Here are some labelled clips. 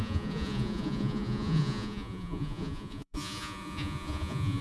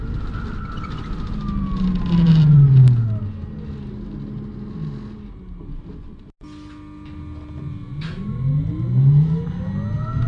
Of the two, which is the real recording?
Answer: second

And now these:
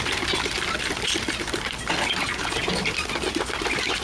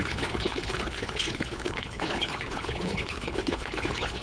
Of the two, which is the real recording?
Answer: first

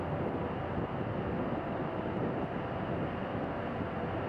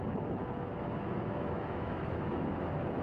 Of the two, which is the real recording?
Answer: first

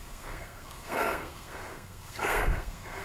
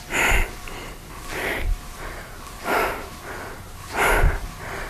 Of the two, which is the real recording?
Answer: second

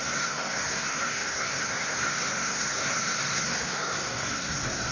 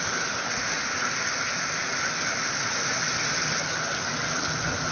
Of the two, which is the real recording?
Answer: second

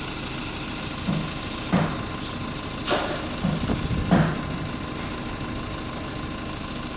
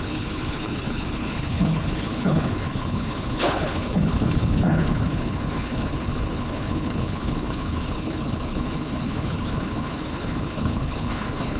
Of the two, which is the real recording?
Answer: first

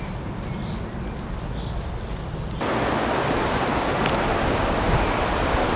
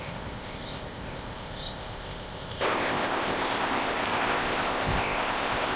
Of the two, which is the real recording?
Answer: first